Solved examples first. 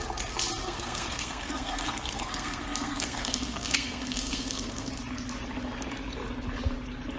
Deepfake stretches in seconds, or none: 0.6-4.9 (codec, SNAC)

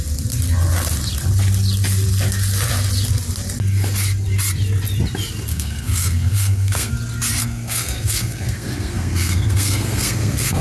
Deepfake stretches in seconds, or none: 5.5-6.9 (codec, SNAC); 7.4-10.6

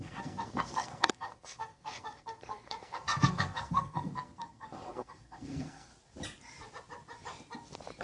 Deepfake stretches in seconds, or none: 0.0-5.9 (codec, SNAC)

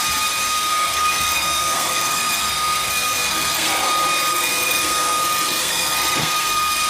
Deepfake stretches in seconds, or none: 0.4-3.9 (codec, SNAC); 4.3-6.9

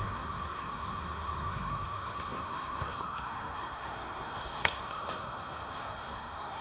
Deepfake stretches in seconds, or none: 0.0-6.6 (codec, SNAC)

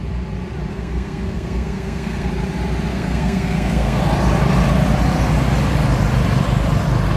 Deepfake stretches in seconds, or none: 0.7-2.3 (codec, SNAC); 2.9-4.0